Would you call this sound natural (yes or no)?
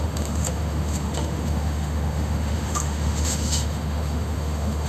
no